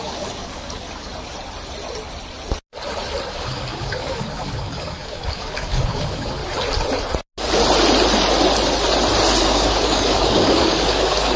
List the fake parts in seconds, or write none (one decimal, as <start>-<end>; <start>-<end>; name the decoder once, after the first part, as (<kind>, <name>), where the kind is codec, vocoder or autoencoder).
0.0-1.1 (codec, DAC); 3.3-6.4; 9.4-11.4